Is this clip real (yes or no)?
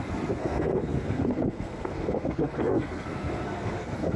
no